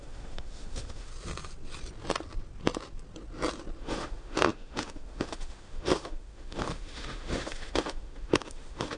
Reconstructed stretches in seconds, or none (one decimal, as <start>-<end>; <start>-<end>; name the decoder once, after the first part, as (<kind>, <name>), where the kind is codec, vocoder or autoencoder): 0.0-1.1 (autoencoder, DAC-VAE); 3.8-9.0